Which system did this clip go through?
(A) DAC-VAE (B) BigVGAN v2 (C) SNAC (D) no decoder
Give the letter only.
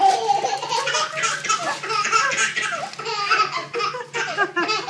D